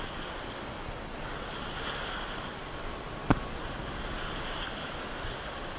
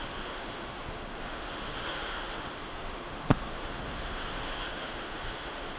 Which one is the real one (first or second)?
first